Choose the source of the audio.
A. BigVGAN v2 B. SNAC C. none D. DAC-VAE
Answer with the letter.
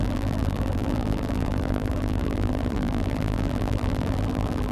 A